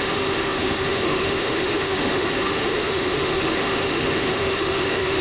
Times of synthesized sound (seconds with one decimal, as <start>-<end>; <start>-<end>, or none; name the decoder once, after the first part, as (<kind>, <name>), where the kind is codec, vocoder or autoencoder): 0.0-5.2 (autoencoder, DAC-VAE)